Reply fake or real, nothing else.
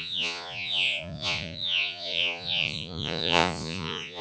fake